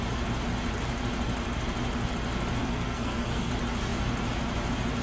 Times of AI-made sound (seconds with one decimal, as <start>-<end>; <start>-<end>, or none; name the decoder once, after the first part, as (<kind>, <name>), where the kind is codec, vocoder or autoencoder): 2.6-3.5 (codec, SNAC)